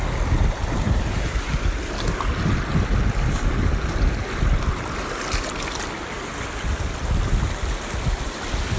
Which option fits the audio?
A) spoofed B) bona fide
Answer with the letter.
B